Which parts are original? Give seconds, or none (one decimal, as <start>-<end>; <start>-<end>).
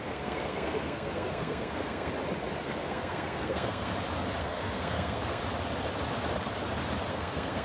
2.1-2.6; 3.9-4.4; 5.4-7.1